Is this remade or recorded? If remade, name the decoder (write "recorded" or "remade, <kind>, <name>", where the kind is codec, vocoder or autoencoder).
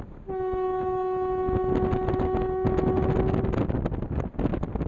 recorded